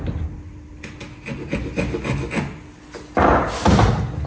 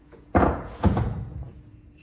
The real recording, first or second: first